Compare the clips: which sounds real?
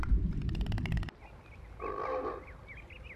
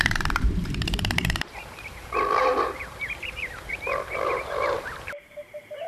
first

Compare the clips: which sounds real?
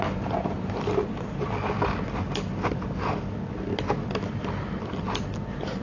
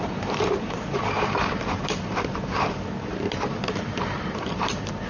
first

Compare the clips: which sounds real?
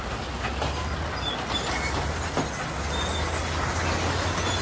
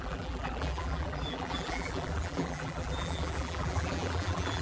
first